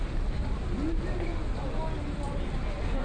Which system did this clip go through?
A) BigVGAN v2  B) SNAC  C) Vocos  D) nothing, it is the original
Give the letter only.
D